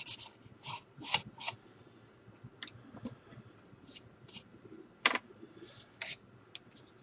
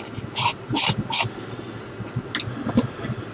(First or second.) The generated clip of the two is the first